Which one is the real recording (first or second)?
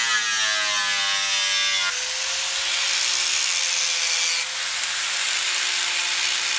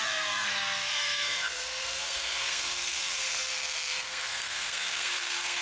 first